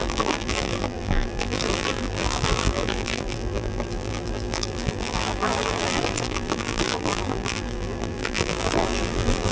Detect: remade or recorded remade